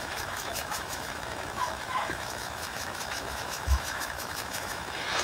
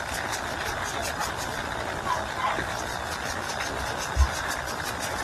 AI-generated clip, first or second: first